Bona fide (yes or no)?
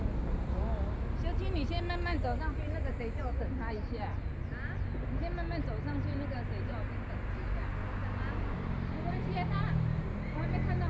yes